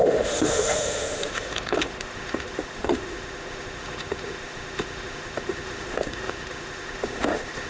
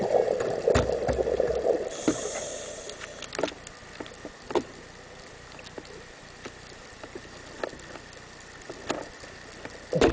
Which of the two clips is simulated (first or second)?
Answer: first